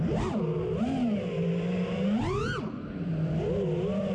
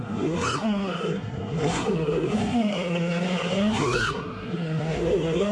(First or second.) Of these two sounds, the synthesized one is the second